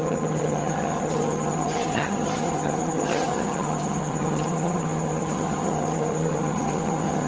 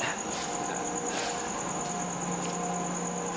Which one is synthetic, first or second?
first